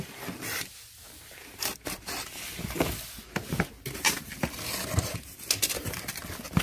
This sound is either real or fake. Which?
real